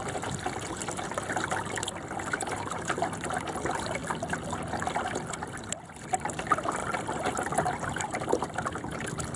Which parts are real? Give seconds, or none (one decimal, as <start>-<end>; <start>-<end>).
0.0-9.4